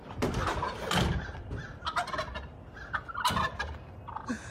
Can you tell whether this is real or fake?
real